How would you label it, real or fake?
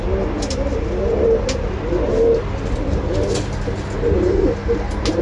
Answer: real